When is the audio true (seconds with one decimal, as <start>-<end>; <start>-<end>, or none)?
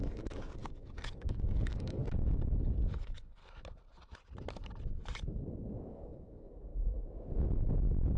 2.0-2.9; 3.4-5.9; 6.7-8.2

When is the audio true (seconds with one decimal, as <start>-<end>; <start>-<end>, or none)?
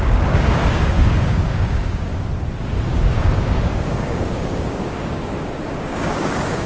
2.1-3.1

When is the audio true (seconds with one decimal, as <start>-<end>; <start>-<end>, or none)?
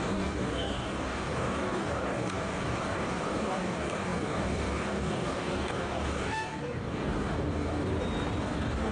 7.9-8.4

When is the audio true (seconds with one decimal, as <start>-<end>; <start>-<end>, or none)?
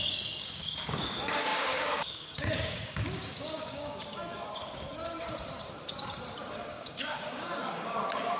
5.0-6.5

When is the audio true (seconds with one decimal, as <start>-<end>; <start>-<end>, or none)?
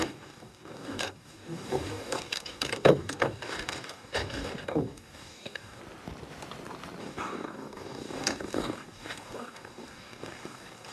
5.8-7.0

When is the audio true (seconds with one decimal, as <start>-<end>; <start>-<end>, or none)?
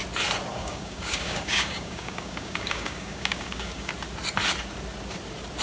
0.0-0.5; 3.9-5.6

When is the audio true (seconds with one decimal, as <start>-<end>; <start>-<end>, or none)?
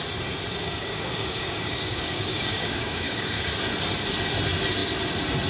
0.0-0.6; 3.6-5.5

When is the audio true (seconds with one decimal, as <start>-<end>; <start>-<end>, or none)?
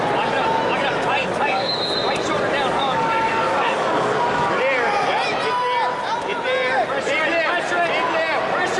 0.0-1.2; 1.8-2.8; 4.6-8.8